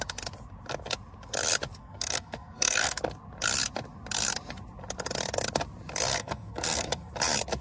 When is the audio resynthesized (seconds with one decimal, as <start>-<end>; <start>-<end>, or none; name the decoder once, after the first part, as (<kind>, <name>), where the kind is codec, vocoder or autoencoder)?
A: 1.8-3.0 (codec, SNAC); 6.1-7.1